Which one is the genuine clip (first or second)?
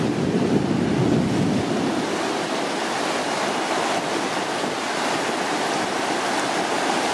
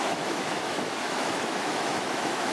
first